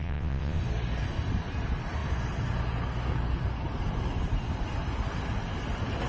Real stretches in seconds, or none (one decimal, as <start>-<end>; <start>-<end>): 0.6-6.1